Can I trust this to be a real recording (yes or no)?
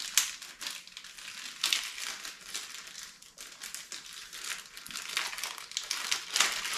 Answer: yes